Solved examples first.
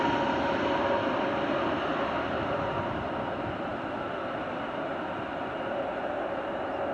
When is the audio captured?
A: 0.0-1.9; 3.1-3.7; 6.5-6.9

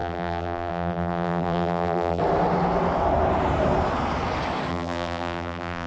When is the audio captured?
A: 2.2-4.7

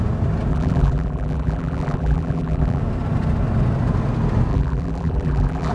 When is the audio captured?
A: 0.0-0.5; 2.8-4.5

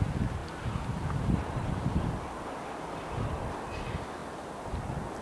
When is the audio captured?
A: 0.0-0.4; 3.5-5.2

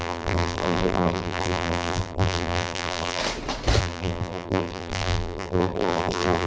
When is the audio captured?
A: 3.2-3.8

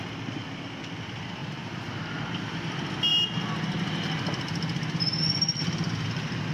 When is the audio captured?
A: 0.0-1.4; 2.0-6.5

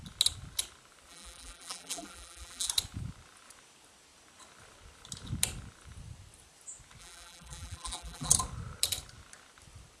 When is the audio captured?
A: 0.0-1.1; 2.7-7.0; 8.3-10.0